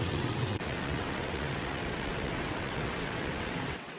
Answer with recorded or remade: remade